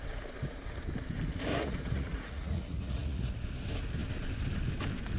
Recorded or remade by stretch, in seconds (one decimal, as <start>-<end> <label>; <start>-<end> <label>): 0.0-1.5 recorded; 1.5-3.3 remade; 3.3-5.2 recorded